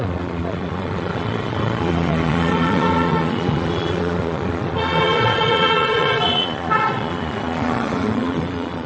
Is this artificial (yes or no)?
yes